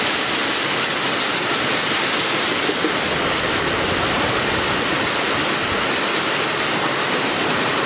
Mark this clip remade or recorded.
recorded